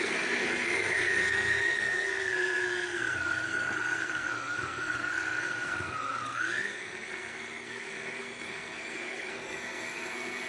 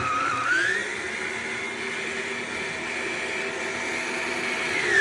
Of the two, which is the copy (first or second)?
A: first